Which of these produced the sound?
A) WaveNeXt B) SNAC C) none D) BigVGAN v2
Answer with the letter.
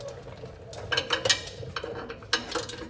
C